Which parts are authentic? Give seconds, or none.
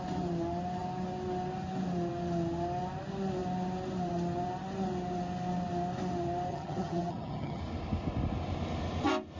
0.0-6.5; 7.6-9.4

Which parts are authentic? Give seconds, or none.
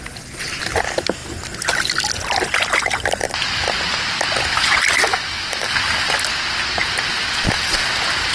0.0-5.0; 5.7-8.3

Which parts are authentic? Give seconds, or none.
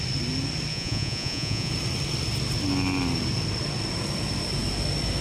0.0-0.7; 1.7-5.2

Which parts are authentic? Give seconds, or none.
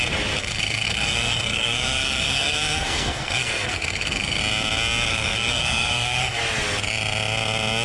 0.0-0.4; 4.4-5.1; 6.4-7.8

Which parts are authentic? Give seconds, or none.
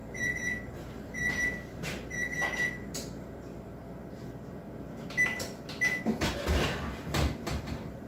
4.0-6.0